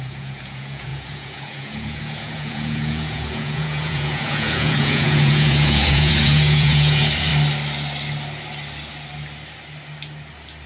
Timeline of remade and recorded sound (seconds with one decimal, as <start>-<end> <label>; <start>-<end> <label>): 0.0-7.3 remade; 7.3-10.7 recorded